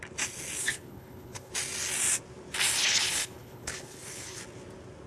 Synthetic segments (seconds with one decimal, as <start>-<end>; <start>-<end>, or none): 0.6-1.5; 2.8-4.4